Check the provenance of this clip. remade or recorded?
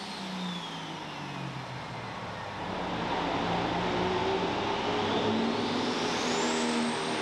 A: recorded